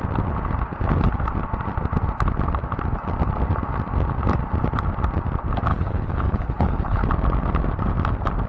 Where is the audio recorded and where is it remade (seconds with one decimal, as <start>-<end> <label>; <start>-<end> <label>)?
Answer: 0.0-5.7 recorded; 5.7-7.1 remade; 7.1-8.5 recorded